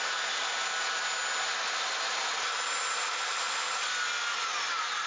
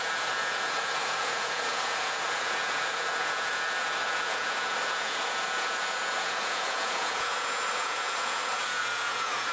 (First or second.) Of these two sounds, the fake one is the second